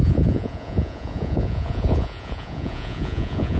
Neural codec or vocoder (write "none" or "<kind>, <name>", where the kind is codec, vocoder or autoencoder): vocoder, Vocos